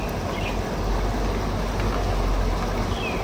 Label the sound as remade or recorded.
recorded